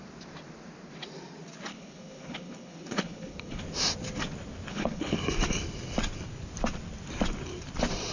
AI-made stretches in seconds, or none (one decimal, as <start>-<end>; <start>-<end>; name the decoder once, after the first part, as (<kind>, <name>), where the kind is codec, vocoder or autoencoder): 1.7-3.6 (codec, HILCodec); 4.7-5.2